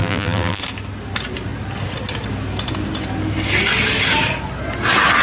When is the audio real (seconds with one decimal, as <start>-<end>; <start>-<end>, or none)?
0.6-5.2